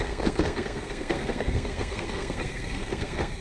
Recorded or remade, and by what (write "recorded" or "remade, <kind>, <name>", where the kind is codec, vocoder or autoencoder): remade, codec, SNAC